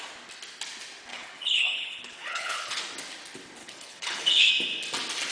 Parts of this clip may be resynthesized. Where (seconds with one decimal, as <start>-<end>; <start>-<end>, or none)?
1.1-2.8; 3.6-4.5